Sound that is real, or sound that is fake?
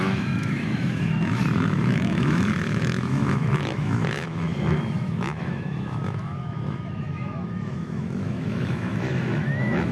fake